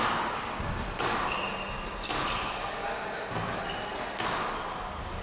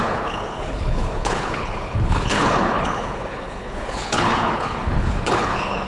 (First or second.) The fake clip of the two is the second